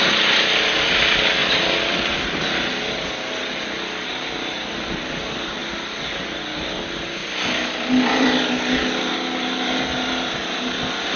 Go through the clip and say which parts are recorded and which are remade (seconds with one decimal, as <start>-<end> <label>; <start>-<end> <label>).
0.0-1.4 recorded; 1.4-2.8 remade; 2.8-7.2 recorded; 7.2-11.2 remade